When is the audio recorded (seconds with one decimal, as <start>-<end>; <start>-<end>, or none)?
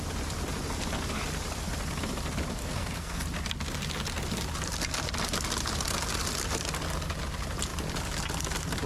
0.0-2.6; 3.2-8.9